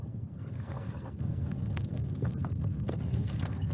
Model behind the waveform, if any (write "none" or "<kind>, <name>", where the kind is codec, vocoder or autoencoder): codec, SNAC